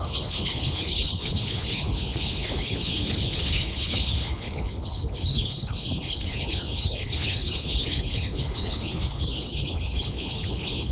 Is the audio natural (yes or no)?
no